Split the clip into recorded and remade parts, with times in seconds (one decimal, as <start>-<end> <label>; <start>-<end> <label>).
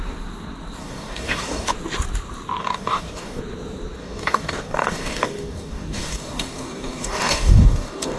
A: 0.0-0.8 recorded; 0.8-1.7 remade; 1.7-2.6 recorded; 2.6-3.4 remade; 3.4-4.0 recorded; 4.0-8.2 remade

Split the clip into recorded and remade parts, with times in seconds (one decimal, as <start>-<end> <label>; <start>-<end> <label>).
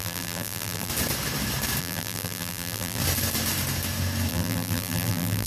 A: 0.0-0.9 remade; 0.9-1.8 recorded; 1.8-3.0 remade; 3.0-4.3 recorded; 4.3-5.5 remade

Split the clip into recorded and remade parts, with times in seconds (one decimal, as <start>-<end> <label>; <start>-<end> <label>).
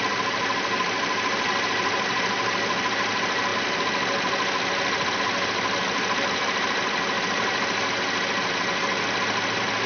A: 0.0-9.9 recorded